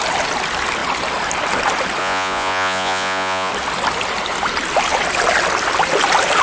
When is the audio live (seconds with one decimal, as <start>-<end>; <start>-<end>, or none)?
0.0-2.0; 3.5-6.4